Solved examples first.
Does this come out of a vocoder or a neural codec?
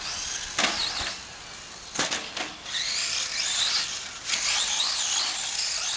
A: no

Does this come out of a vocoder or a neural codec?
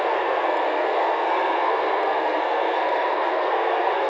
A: yes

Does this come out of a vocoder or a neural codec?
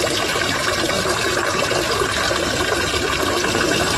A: yes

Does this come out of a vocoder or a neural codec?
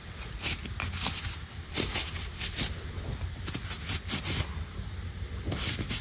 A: no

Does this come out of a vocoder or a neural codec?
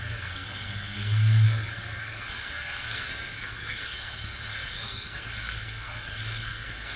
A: yes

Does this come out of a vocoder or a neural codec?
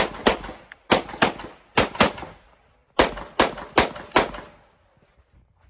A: no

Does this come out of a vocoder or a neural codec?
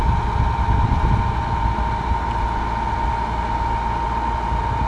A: no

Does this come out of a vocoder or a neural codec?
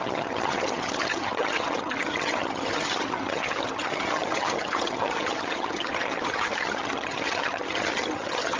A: yes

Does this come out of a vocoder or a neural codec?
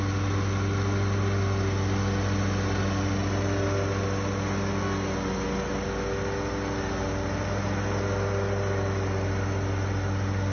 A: no